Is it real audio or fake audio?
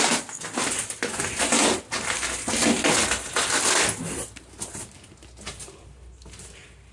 real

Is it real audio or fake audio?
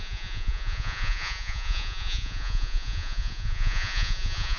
fake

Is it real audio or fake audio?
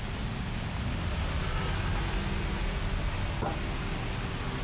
real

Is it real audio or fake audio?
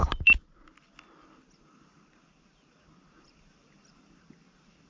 real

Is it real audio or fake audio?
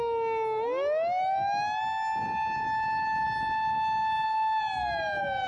real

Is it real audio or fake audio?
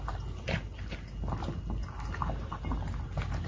real